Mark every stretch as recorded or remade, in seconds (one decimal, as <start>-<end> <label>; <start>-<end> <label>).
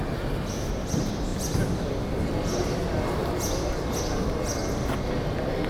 0.0-5.7 recorded